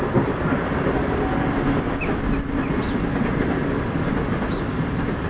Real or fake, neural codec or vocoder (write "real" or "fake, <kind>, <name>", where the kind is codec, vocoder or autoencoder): real